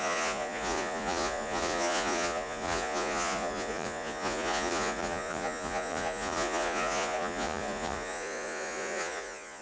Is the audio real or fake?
fake